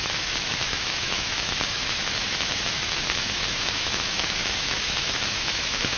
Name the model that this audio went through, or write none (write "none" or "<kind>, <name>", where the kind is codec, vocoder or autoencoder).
autoencoder, DAC-VAE